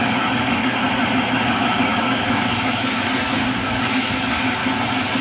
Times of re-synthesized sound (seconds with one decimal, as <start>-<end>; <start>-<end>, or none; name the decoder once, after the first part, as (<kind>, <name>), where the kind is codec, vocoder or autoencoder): 0.0-0.8 (codec, DAC); 1.4-4.6